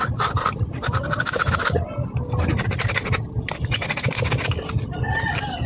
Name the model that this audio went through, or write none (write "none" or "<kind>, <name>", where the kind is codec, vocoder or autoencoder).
none